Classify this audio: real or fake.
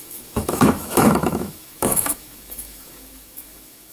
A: fake